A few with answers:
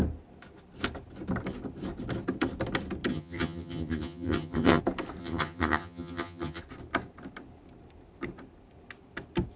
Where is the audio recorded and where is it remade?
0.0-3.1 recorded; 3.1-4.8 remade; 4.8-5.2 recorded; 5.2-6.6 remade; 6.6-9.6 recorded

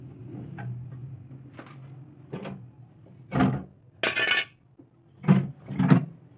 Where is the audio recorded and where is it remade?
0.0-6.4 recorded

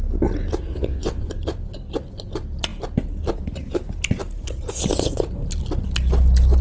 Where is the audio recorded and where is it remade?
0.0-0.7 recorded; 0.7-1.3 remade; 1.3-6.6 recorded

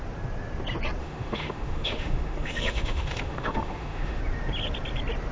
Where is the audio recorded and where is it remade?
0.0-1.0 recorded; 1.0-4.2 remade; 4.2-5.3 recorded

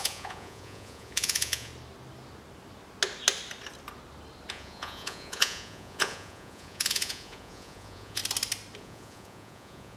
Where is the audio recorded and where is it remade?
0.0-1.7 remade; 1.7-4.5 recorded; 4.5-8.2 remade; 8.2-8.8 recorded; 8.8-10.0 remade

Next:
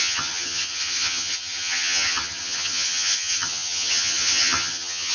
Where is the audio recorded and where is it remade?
0.0-5.1 remade